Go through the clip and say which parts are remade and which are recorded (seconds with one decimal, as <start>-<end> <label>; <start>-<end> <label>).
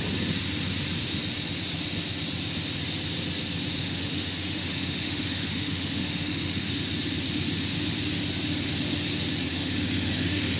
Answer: 0.0-3.8 recorded; 3.8-6.7 remade; 6.7-9.5 recorded; 9.5-10.6 remade